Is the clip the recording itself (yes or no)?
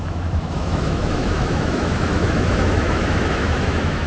no